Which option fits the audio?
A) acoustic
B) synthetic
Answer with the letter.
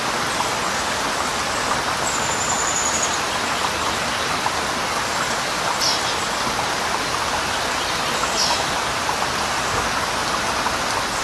A